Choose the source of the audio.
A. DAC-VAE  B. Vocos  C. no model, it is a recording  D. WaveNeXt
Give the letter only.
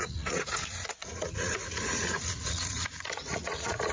B